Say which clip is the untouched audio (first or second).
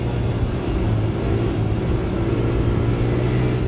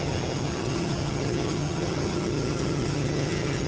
first